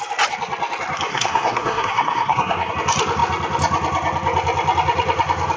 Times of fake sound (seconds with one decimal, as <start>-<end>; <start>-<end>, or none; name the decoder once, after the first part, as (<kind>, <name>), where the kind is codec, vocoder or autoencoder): 1.1-2.7 (codec, SNAC)